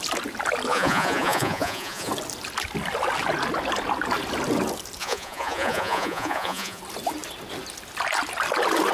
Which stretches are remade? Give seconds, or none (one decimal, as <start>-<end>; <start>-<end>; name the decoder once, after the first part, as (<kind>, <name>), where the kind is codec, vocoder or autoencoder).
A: 0.7-2.1 (vocoder, Vocos); 5.0-6.8